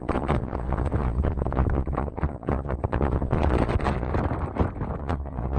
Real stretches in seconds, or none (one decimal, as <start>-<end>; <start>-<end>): 4.1-5.0